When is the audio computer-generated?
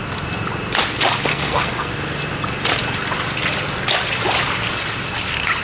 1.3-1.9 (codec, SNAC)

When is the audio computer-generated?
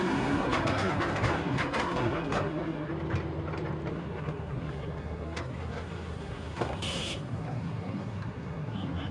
0.0-2.9 (codec, SNAC); 3.9-9.1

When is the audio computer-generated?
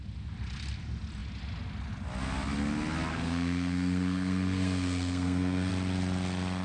3.1-5.7 (codec, SNAC)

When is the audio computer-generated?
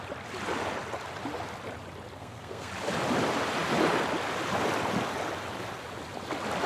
2.2-2.7 (codec, SNAC)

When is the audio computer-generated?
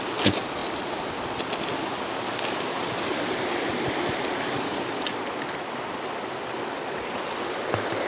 none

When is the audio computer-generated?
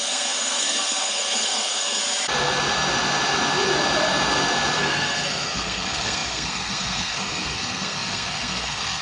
0.0-2.0 (codec, SNAC); 4.8-9.0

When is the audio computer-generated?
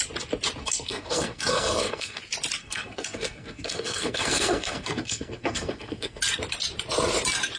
0.6-2.2 (codec, SNAC); 2.6-6.2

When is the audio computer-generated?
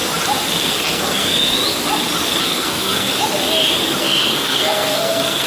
0.6-1.6 (codec, SNAC); 2.4-3.1; 4.0-5.5